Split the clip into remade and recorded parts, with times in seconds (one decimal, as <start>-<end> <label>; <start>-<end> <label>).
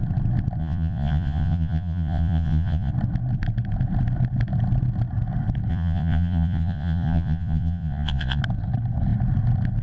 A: 0.0-0.6 recorded; 0.6-2.9 remade; 2.9-5.7 recorded; 5.7-8.4 remade; 8.4-9.8 recorded